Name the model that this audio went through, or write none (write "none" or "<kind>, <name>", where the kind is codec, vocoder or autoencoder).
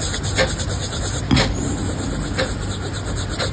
none